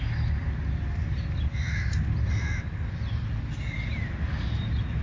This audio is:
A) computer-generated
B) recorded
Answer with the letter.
B